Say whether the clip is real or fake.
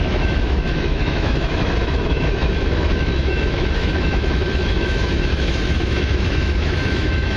fake